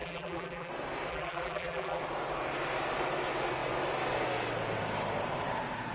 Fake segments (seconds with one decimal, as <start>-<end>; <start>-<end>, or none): 0.0-0.7; 1.1-2.0